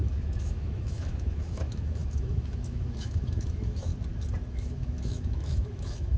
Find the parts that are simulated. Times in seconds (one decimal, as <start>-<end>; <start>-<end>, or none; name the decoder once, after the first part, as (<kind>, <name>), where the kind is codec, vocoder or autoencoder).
0.0-3.9 (autoencoder, DAC-VAE); 4.5-6.2